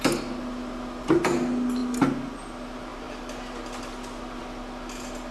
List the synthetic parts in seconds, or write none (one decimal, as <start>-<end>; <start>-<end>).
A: none